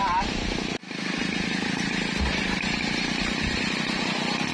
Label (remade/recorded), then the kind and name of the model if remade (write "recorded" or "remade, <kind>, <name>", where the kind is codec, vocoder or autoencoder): recorded